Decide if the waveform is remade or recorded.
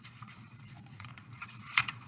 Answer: remade